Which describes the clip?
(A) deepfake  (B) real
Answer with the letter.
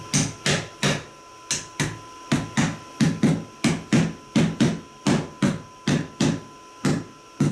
B